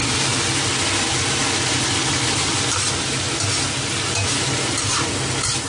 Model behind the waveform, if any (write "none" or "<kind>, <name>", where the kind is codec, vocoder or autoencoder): none